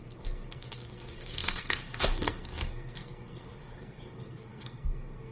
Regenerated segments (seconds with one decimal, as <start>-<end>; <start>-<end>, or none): 0.0-5.3